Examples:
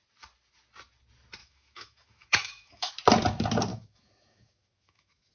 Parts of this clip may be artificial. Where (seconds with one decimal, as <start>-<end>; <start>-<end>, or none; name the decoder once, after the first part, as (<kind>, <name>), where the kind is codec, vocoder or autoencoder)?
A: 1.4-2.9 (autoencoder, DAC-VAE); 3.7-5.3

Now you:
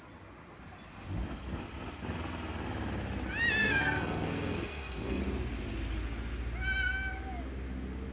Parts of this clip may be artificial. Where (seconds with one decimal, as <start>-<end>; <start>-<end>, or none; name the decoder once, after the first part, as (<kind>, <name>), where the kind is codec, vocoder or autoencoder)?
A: 3.6-5.2 (codec, SNAC)

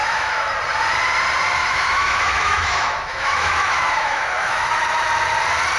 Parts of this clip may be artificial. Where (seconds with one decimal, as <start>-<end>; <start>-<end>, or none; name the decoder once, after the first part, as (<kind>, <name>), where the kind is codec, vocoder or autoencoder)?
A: 0.0-0.5 (autoencoder, DAC-VAE); 1.6-4.7